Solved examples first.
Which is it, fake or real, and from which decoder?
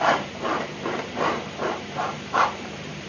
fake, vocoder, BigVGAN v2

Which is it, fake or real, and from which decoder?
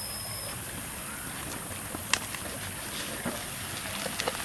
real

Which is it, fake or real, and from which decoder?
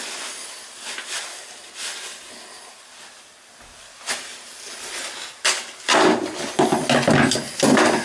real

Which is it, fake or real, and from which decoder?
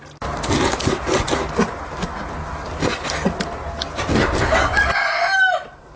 real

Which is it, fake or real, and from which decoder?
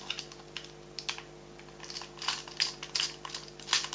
real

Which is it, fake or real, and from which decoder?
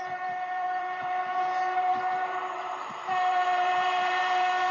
fake, vocoder, BigVGAN v2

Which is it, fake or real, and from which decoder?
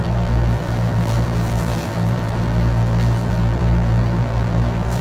fake, vocoder, BigVGAN v2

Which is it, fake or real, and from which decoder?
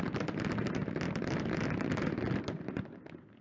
real